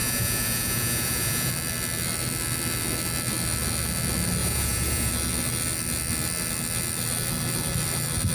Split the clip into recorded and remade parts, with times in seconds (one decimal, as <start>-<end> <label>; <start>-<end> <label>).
0.0-1.5 remade; 1.5-4.4 recorded; 4.4-5.1 remade; 5.1-8.3 recorded